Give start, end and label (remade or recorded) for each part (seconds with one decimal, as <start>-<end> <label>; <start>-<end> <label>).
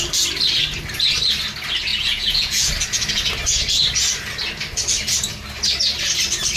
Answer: 0.0-1.9 recorded; 1.9-2.7 remade; 2.7-6.6 recorded